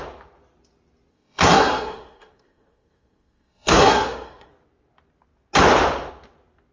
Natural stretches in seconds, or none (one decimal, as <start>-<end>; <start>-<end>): 0.0-1.1; 4.5-6.7